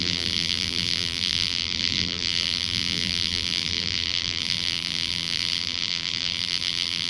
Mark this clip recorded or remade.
remade